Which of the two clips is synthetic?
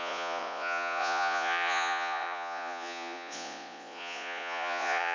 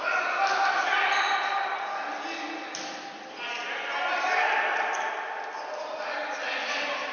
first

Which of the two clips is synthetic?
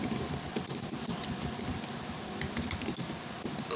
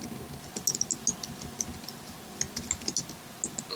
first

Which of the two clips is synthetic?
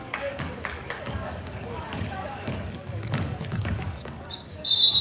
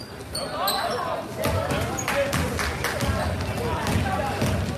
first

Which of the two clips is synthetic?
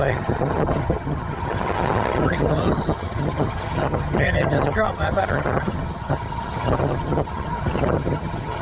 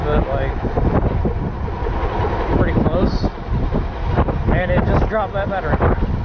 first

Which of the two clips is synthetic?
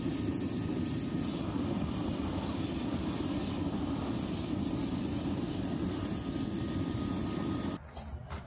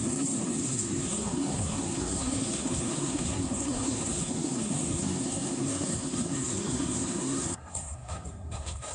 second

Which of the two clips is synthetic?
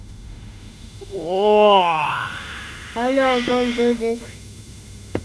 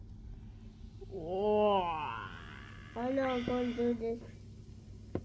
first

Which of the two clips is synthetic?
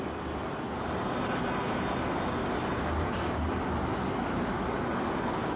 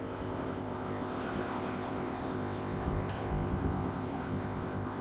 second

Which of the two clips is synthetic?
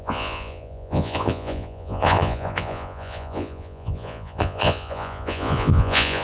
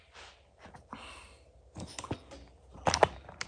first